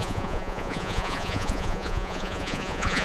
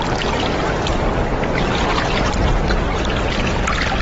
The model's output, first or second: first